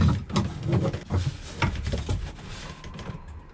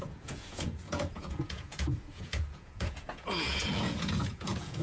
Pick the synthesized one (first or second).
second